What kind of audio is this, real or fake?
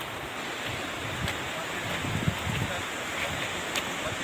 real